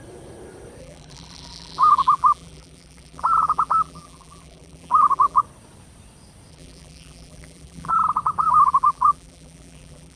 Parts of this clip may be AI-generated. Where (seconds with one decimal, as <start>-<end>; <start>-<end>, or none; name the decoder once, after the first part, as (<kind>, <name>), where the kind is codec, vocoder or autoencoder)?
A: 0.8-5.4 (vocoder, BigVGAN v2); 6.5-7.9; 8.4-10.2